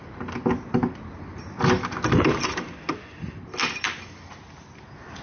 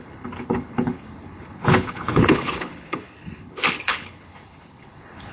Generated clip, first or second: second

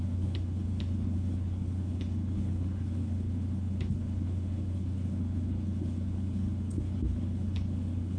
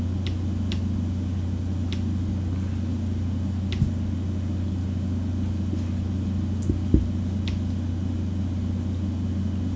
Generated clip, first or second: first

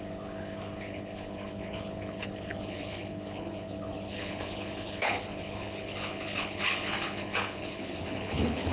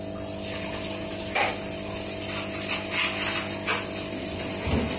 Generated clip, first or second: first